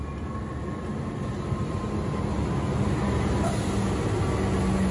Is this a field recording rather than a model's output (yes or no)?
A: yes